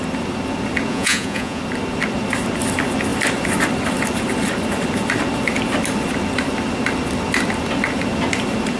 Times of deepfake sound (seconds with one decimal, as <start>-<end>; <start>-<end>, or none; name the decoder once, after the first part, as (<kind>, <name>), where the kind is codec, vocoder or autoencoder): 0.9-1.6 (vocoder, Vocos)